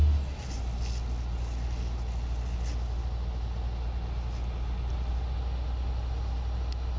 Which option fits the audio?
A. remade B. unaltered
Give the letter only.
B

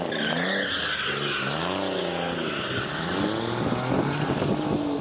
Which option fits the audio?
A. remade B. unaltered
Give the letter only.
B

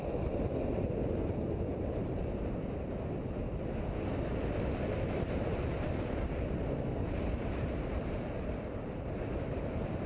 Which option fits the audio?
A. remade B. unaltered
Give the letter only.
B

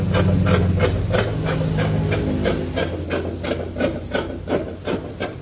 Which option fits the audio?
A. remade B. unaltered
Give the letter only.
B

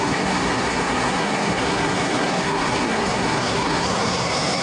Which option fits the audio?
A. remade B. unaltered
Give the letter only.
A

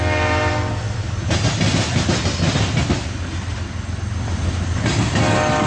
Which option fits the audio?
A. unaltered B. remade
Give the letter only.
A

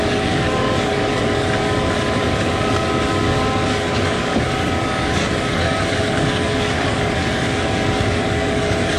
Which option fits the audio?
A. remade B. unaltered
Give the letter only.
A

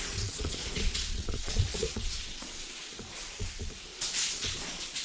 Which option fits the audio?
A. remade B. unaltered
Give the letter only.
A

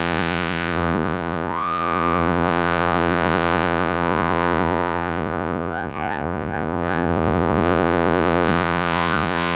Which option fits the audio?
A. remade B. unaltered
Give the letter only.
A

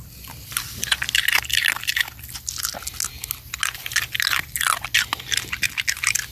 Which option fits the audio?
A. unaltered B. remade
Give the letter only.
A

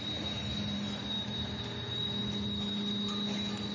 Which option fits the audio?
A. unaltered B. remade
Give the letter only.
A